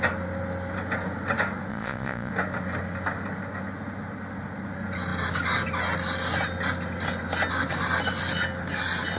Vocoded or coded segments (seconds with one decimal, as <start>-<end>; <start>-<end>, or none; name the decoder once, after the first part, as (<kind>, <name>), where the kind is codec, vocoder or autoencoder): 1.7-2.3 (vocoder, Vocos)